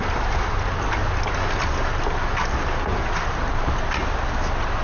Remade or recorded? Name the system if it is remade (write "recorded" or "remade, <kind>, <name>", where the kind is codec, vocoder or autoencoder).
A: recorded